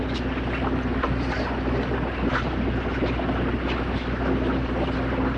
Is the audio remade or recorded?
recorded